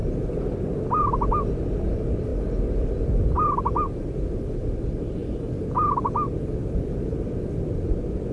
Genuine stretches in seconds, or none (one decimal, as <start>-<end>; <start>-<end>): 0.0-8.3